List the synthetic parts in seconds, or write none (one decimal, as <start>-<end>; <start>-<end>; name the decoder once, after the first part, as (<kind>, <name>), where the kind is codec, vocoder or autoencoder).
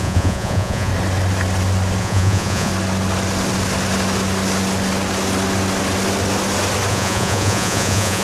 0.0-0.9 (vocoder, Vocos); 2.0-2.7; 6.9-8.2